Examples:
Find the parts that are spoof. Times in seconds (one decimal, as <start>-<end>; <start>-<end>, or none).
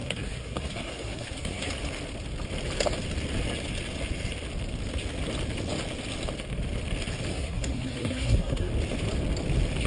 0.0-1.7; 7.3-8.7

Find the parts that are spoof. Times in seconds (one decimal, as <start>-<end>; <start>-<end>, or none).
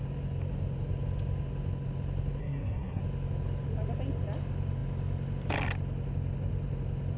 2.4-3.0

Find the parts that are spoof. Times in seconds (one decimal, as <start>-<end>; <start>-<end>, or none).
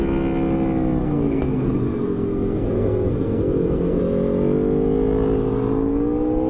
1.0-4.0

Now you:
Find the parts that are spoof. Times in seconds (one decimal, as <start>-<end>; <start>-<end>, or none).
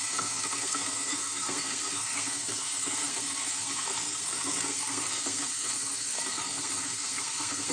0.0-7.7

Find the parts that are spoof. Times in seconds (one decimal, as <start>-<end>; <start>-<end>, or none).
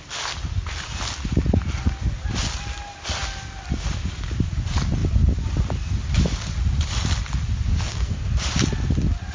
7.7-8.3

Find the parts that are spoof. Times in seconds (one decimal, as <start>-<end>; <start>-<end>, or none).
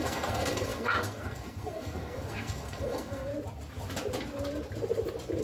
0.0-3.3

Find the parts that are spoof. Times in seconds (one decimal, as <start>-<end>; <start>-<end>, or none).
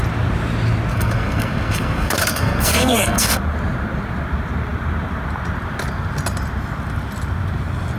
0.9-3.4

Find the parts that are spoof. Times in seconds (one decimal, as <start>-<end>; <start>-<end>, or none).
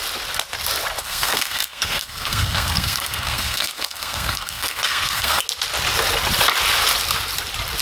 1.0-5.4